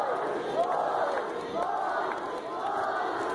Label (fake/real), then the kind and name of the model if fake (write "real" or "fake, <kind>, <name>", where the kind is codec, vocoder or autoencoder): real